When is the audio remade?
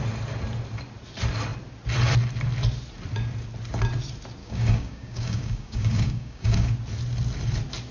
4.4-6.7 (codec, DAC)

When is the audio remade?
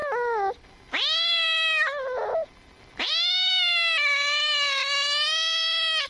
none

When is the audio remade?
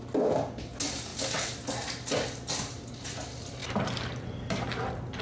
none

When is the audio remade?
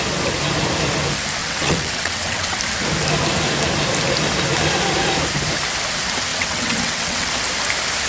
1.4-2.6 (vocoder, WaveNeXt); 6.3-7.3